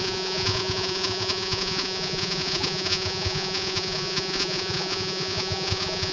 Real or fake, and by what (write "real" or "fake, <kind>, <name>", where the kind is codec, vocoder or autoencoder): fake, vocoder, Vocos